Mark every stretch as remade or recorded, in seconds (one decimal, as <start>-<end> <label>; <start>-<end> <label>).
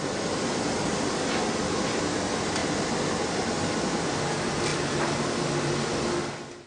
0.0-6.7 recorded